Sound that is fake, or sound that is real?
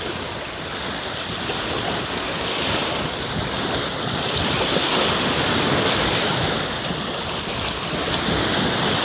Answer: real